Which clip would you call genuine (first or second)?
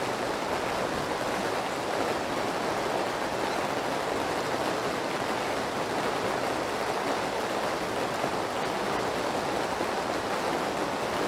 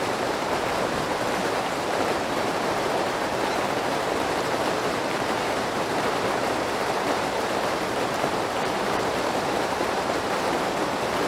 first